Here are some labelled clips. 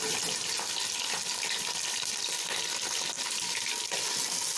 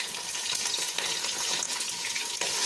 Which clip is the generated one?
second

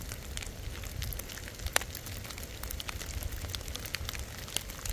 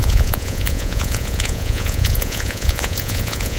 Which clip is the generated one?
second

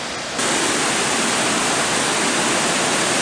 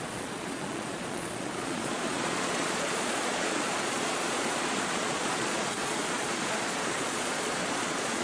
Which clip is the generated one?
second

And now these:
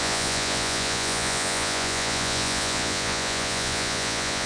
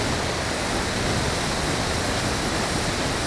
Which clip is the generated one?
first